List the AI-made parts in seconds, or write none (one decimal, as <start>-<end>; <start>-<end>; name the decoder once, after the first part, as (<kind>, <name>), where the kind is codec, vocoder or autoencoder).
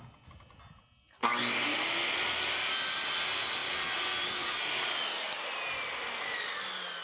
none